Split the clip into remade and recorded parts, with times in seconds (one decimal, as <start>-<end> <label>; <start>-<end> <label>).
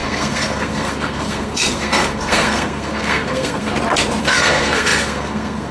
0.0-3.7 remade; 3.7-4.2 recorded; 4.2-5.7 remade